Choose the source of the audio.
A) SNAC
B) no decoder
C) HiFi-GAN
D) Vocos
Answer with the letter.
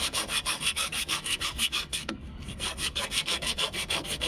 A